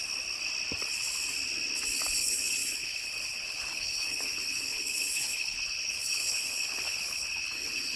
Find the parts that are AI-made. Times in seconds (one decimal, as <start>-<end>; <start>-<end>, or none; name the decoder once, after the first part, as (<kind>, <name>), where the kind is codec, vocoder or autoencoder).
2.1-8.0 (codec, HILCodec)